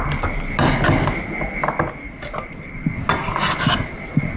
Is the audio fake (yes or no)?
no